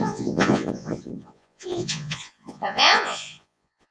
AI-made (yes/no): yes